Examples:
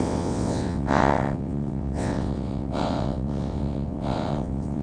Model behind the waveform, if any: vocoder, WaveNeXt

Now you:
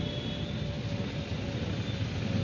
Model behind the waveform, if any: none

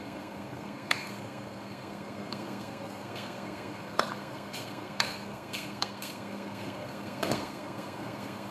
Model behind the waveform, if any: codec, SNAC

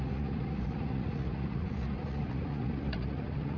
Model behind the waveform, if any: vocoder, Vocos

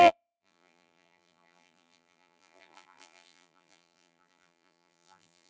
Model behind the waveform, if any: vocoder, BigVGAN v2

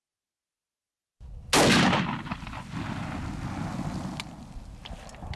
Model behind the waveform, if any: none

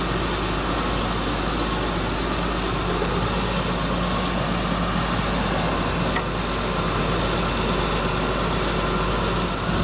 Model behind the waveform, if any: none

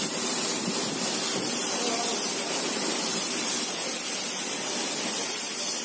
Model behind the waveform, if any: none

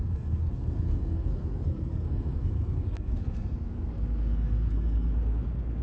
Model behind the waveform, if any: codec, SNAC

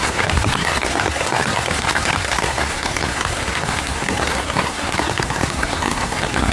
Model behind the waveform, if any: codec, SNAC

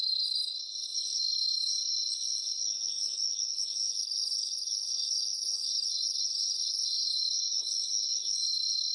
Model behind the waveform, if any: codec, HILCodec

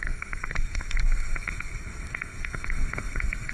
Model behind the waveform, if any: codec, SNAC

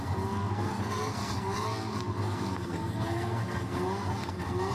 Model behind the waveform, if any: codec, SNAC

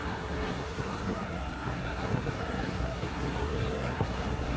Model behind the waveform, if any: codec, SNAC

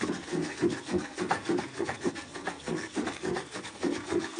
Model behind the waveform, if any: codec, SNAC